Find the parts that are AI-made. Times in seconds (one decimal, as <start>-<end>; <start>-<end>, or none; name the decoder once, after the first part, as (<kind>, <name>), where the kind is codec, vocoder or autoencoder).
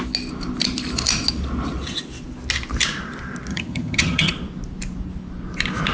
3.5-4.3 (vocoder, HiFi-GAN)